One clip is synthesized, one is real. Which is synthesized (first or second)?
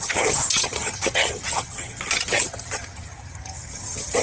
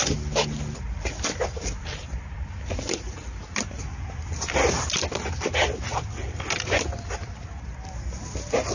first